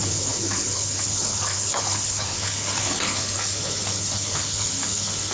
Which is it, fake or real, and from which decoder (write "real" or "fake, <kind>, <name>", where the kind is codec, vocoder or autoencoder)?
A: fake, codec, HILCodec